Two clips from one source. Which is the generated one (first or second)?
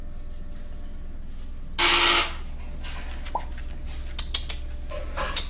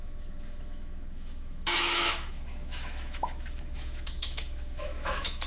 second